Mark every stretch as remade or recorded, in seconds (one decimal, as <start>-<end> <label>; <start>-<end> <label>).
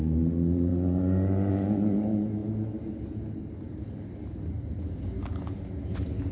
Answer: 0.0-6.3 recorded